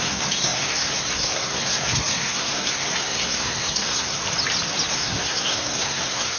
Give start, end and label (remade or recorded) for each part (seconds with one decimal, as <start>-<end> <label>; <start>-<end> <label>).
0.0-4.2 remade; 4.2-4.9 recorded; 4.9-6.4 remade